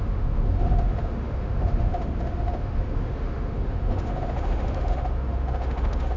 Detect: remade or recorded remade